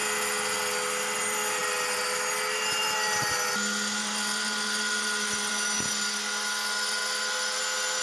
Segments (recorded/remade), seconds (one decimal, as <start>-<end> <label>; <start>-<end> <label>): 0.0-4.0 recorded; 4.0-5.5 remade; 5.5-7.0 recorded; 7.0-7.6 remade; 7.6-8.0 recorded